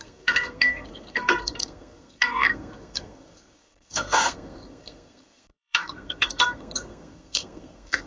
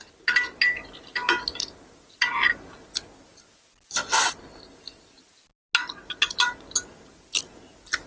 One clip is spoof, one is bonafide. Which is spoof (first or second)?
first